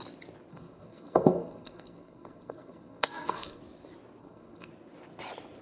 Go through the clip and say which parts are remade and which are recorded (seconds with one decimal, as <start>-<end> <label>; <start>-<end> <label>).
0.0-0.5 recorded; 0.5-3.6 remade; 3.6-4.2 recorded; 4.2-4.7 remade; 4.7-5.6 recorded